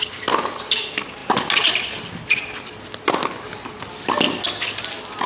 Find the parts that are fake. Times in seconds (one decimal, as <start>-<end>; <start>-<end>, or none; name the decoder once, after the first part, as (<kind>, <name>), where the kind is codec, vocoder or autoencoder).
none